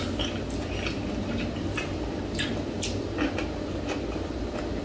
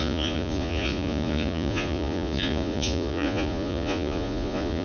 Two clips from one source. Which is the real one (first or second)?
first